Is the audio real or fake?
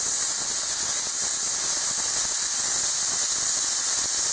real